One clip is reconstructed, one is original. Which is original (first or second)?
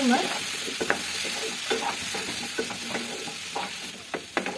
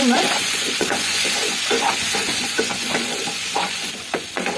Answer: first